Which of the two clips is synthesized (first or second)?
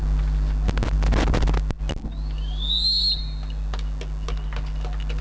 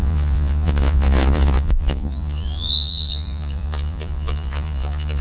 second